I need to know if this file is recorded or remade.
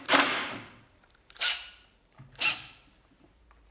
remade